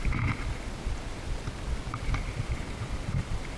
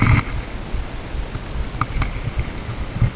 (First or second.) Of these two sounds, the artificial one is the first